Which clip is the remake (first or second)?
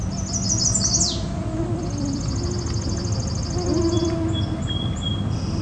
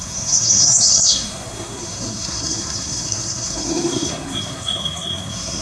second